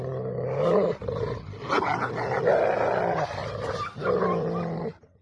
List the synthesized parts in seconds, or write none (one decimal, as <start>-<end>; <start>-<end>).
none